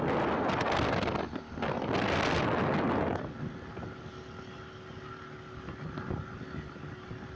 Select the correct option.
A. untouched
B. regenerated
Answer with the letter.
A